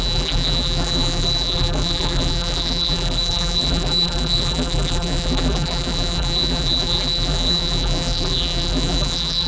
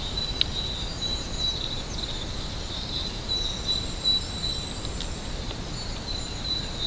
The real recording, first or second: second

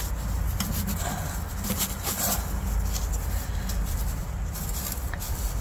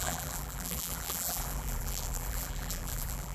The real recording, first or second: first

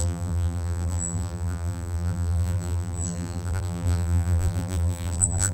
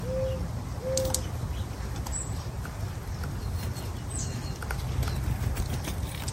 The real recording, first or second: second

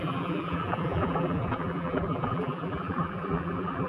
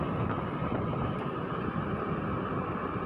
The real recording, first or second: second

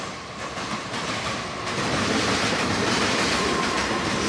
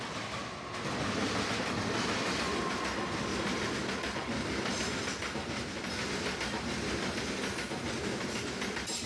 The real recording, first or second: second